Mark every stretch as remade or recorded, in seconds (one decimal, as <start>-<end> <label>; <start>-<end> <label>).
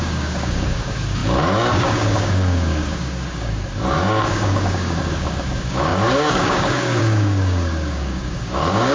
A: 0.0-8.9 remade